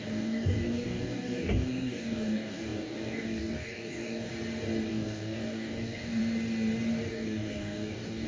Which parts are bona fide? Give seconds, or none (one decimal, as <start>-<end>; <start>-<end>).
4.3-4.9; 6.2-7.1